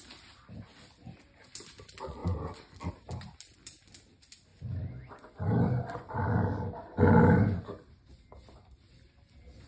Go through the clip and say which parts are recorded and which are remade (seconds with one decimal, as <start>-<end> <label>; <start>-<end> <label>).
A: 0.0-9.7 recorded